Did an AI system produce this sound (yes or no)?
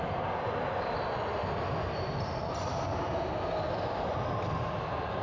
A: no